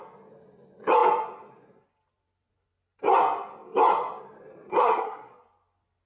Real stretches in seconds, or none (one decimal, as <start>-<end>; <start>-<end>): 0.0-4.7; 5.3-6.1